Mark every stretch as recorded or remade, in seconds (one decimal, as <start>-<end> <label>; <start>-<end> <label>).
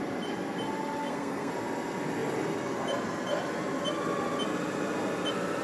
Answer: 0.0-1.0 recorded; 1.0-1.5 remade; 1.5-5.6 recorded